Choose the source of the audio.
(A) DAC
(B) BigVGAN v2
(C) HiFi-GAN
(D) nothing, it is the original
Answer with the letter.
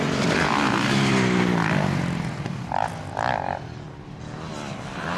D